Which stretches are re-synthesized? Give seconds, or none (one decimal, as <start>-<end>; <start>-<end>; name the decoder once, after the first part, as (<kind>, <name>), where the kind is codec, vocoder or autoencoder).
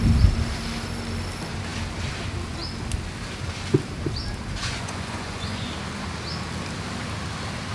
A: 4.6-5.7 (vocoder, Vocos)